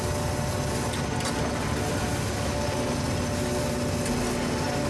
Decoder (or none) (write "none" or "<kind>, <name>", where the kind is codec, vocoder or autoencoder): none